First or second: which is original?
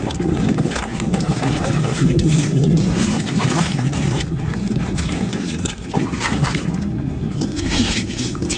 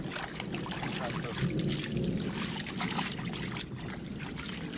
second